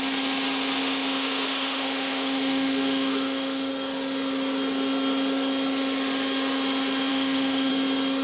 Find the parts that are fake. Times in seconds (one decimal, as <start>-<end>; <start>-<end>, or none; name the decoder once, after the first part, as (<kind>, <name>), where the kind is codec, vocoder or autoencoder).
0.8-3.7 (autoencoder, DAC-VAE); 7.1-7.7